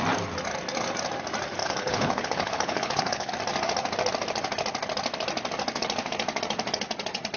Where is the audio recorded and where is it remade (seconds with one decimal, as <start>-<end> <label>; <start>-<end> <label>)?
0.0-1.6 recorded; 1.6-3.3 remade; 3.3-7.4 recorded